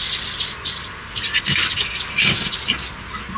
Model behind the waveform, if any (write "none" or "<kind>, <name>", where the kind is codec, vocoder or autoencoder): vocoder, BigVGAN v2